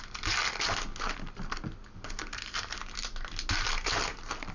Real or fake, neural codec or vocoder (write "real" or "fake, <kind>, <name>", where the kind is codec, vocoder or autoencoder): real